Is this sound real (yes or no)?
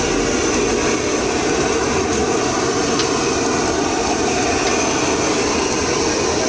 yes